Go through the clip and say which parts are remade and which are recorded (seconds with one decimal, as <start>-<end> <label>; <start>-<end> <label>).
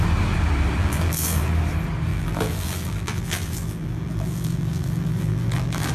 0.0-0.8 recorded; 0.8-1.5 remade; 1.5-2.1 recorded; 2.1-5.9 remade